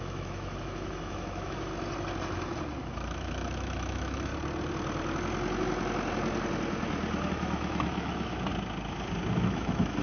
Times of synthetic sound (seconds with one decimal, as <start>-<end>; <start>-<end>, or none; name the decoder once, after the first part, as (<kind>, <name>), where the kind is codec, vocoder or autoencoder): 0.0-1.7 (autoencoder, DAC-VAE); 2.8-4.3; 7.3-8.5; 9.3-10.0